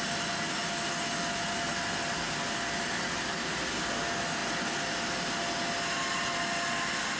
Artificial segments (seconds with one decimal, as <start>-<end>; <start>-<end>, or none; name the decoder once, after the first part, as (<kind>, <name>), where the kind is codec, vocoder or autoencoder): none